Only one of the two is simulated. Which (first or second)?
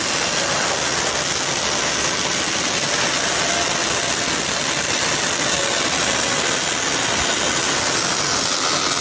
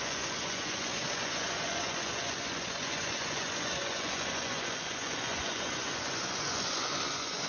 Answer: second